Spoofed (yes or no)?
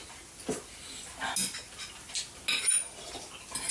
no